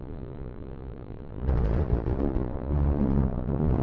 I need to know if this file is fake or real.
fake